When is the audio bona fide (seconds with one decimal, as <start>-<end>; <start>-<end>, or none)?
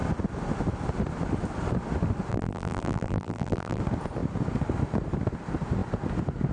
0.0-2.3; 3.8-6.5